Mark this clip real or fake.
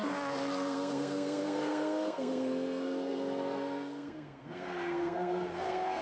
fake